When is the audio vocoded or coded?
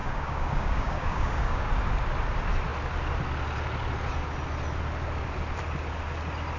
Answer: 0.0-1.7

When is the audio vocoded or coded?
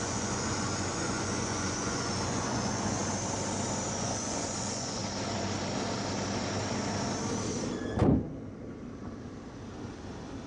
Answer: 0.0-3.0; 3.9-5.0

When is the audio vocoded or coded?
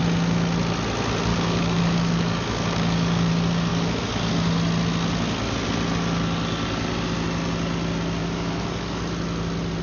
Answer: 1.3-3.3; 3.7-4.3; 8.2-9.0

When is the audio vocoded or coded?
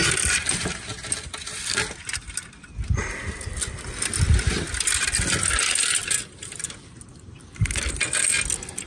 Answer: none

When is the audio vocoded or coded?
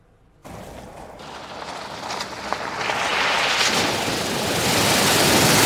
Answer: none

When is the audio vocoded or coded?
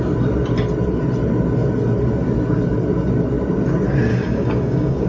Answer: 4.1-5.1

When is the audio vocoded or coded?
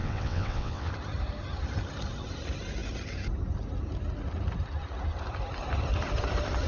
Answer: 0.0-0.9